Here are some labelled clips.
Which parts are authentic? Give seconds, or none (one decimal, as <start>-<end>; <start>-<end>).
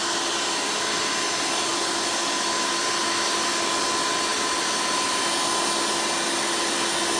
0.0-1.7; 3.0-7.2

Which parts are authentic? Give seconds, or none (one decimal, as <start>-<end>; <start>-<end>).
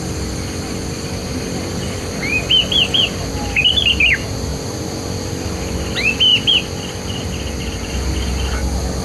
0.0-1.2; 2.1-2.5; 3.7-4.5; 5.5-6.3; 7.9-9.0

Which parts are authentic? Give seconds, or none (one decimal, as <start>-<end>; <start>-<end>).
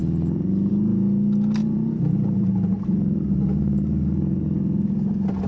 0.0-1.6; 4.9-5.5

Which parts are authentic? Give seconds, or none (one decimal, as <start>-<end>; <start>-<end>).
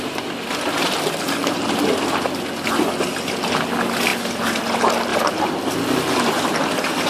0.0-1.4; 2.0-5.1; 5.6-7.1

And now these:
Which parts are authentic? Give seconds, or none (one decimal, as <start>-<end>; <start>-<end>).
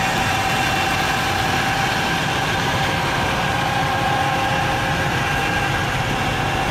0.0-6.7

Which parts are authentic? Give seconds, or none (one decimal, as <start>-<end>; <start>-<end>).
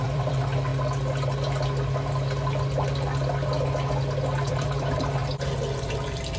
0.7-4.5; 5.2-5.9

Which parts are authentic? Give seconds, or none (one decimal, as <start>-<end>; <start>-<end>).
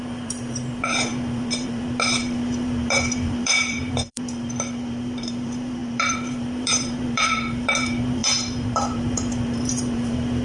none